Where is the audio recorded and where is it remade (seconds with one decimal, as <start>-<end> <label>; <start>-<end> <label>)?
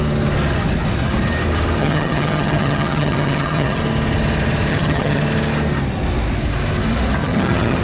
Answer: 0.0-1.8 recorded; 1.8-3.8 remade; 3.8-4.7 recorded; 4.7-5.2 remade; 5.2-7.2 recorded; 7.2-7.8 remade